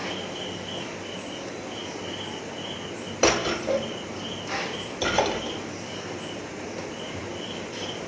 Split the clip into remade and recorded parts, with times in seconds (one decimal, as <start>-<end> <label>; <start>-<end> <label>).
0.0-8.1 recorded